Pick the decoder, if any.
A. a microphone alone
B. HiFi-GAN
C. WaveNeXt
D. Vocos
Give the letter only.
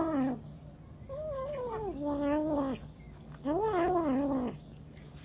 A